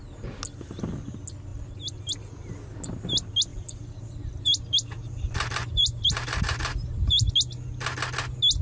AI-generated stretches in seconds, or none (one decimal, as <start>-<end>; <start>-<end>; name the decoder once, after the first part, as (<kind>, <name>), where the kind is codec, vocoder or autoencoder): 3.5-7.3 (vocoder, BigVGAN v2)